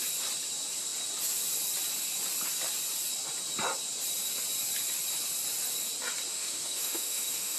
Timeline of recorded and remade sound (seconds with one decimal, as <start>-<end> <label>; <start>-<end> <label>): 0.0-6.3 recorded; 6.3-7.6 remade